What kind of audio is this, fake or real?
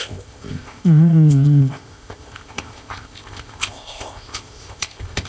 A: fake